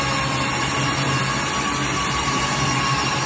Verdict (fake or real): real